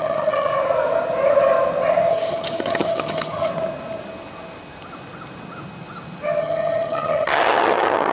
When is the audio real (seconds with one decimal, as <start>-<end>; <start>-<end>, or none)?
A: 0.5-2.1; 3.5-6.4